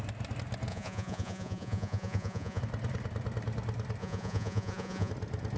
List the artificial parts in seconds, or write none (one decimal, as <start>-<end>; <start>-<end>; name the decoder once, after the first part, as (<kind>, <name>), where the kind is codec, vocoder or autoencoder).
0.7-2.6 (vocoder, Vocos); 4.0-5.1